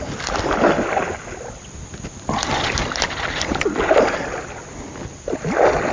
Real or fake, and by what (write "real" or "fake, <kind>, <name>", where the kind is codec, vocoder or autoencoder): real